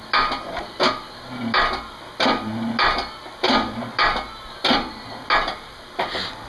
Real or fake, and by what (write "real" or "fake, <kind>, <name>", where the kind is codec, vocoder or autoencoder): real